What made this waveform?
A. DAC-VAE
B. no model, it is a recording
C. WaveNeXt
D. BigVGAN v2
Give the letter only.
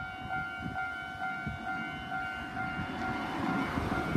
B